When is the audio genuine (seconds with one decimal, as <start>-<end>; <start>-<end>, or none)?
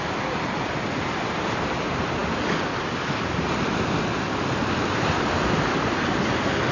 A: 0.0-6.7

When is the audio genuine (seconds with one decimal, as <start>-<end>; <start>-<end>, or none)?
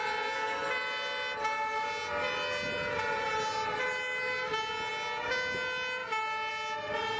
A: 0.0-7.2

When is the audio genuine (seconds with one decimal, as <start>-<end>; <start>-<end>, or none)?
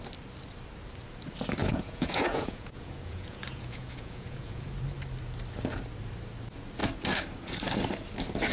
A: 0.0-1.6; 4.7-8.5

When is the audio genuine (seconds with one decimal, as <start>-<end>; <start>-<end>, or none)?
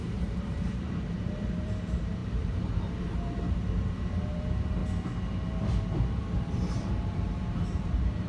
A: 4.8-6.7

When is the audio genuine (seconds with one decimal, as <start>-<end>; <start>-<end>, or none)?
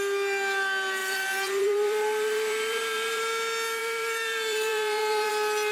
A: 0.0-1.0; 3.2-3.8; 5.3-5.7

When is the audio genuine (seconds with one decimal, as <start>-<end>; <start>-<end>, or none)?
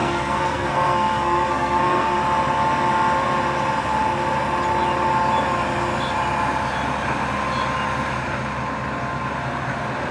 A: 2.2-10.1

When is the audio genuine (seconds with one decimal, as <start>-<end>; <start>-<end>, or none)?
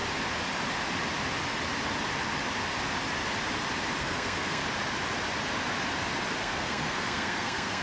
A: 0.0-4.0; 4.6-6.4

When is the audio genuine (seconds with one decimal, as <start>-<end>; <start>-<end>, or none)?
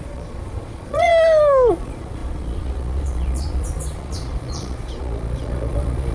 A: 1.1-1.7